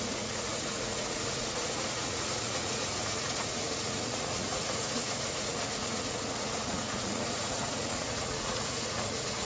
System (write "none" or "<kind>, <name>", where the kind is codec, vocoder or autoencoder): vocoder, Vocos